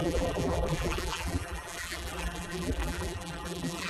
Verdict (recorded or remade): remade